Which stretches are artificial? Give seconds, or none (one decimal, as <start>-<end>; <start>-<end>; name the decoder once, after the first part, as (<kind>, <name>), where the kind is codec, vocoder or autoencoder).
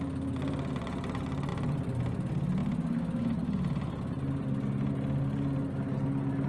1.5-2.0 (vocoder, BigVGAN v2)